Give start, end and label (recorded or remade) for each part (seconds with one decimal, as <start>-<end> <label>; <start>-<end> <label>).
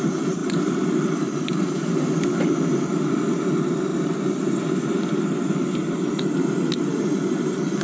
0.0-0.4 recorded; 0.4-2.4 remade; 2.4-3.9 recorded; 3.9-4.6 remade; 4.6-7.8 recorded